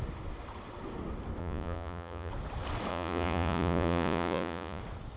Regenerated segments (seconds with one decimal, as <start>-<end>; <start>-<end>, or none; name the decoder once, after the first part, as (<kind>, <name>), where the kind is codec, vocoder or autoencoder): 1.4-2.3 (vocoder, Vocos); 2.9-4.8